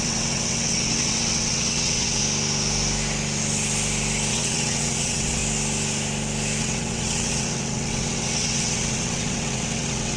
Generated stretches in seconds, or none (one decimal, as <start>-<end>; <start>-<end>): 0.0-2.2; 4.3-5.4; 6.6-10.2